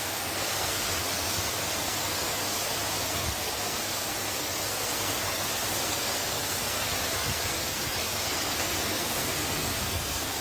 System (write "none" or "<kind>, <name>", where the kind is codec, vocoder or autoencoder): codec, SNAC